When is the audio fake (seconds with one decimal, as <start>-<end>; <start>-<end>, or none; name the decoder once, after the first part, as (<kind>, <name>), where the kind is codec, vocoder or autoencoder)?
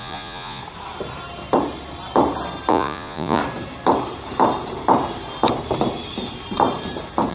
0.0-0.6 (vocoder, Vocos); 2.7-3.4